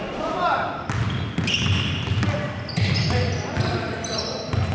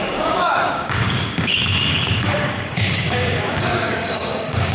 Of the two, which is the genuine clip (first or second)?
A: first